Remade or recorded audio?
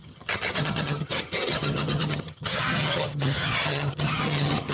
remade